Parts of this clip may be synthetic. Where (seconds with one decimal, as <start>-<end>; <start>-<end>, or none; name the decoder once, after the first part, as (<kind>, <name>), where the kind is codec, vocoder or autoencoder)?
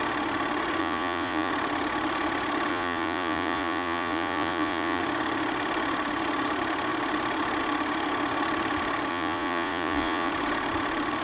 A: 0.8-1.5 (vocoder, Vocos); 2.7-5.0; 9.1-10.3